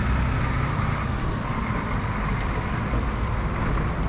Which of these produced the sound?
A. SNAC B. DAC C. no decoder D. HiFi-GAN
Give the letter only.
C